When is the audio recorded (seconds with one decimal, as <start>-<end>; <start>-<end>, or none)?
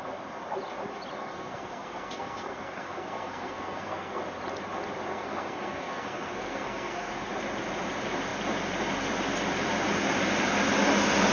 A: 0.0-1.2; 4.2-5.1; 7.1-11.3